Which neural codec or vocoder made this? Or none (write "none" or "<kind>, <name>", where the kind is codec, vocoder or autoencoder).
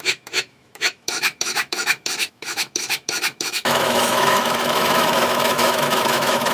autoencoder, DAC-VAE